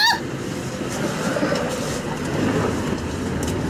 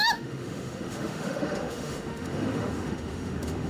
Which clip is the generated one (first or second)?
second